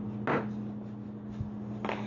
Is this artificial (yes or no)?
no